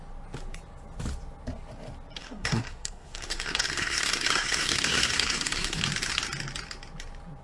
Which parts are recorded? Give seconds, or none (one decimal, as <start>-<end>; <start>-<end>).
0.0-2.2; 5.8-7.4